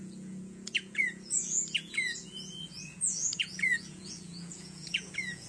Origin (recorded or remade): remade